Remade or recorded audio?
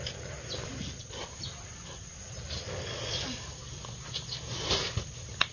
recorded